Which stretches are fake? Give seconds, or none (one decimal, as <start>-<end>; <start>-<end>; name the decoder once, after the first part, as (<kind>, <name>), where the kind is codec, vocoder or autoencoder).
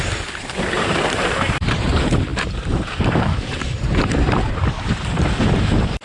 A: 0.0-6.0 (vocoder, BigVGAN v2)